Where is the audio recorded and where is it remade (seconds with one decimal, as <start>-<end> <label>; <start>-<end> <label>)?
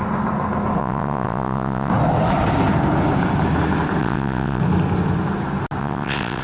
0.0-0.8 recorded; 0.8-1.9 remade; 1.9-4.0 recorded; 4.0-4.6 remade; 4.6-5.8 recorded; 5.8-6.4 remade